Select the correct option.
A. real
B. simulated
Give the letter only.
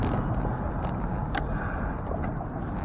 A